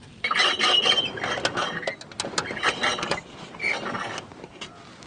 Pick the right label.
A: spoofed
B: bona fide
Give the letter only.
B